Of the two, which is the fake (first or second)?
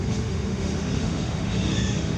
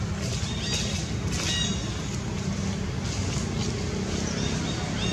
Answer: first